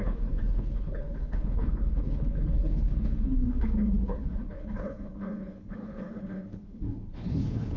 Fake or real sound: fake